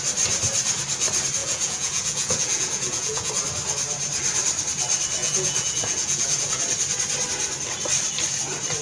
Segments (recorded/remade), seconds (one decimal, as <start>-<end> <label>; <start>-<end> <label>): 0.0-1.4 recorded; 1.4-3.3 remade; 3.3-5.2 recorded; 5.2-6.6 remade; 6.6-8.8 recorded

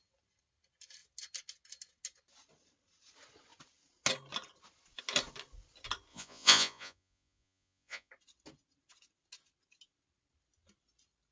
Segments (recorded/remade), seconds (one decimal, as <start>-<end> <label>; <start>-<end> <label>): 0.0-6.1 recorded; 6.1-8.1 remade; 8.1-11.3 recorded

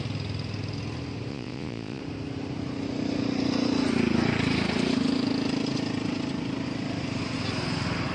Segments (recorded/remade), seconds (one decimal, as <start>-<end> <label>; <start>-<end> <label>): 0.0-1.3 recorded; 1.3-2.0 remade; 2.0-8.1 recorded

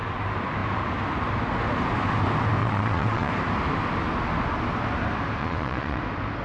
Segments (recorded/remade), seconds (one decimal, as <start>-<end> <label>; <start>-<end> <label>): 0.0-2.6 recorded; 2.6-3.3 remade; 3.3-5.4 recorded; 5.4-6.0 remade; 6.0-6.4 recorded

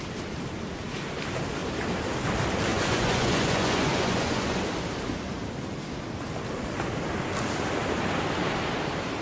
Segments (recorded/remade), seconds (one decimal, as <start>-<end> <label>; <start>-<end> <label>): 0.0-2.7 recorded; 2.7-4.6 remade; 4.6-9.2 recorded

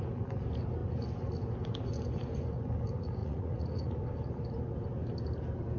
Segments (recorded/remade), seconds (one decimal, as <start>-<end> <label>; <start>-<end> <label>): 0.0-3.2 recorded; 3.2-4.0 remade; 4.0-5.8 recorded

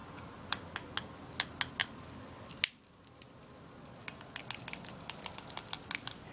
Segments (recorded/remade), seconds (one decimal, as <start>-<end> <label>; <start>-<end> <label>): 0.0-6.3 recorded